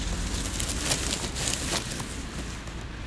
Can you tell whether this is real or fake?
real